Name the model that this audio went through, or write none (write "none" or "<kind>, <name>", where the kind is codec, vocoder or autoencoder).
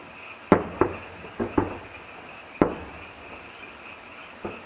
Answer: none